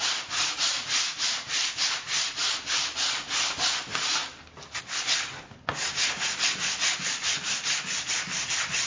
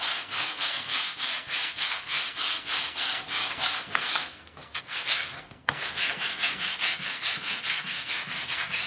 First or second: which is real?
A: first